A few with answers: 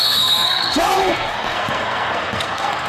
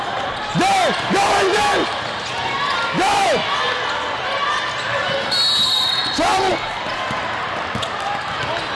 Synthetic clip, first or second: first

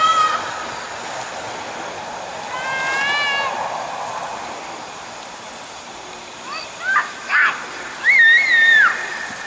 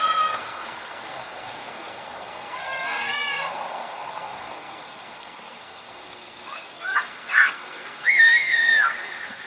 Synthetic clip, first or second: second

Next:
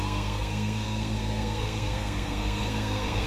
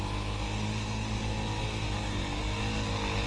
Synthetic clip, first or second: first